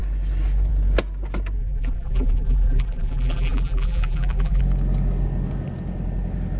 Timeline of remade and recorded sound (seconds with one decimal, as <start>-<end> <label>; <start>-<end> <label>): 0.0-1.6 recorded; 1.6-4.6 remade; 4.6-6.6 recorded